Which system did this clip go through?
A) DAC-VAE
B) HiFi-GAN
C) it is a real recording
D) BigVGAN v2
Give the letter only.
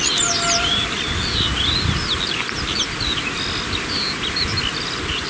C